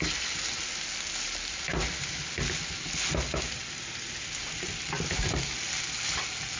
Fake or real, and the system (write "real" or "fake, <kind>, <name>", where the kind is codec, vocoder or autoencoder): real